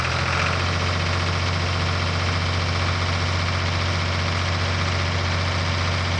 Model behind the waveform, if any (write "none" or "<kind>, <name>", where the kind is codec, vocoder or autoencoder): none